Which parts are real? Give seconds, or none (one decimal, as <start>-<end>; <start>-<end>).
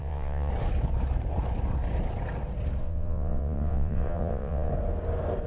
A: 0.5-2.8; 4.7-5.5